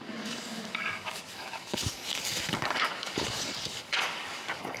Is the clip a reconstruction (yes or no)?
yes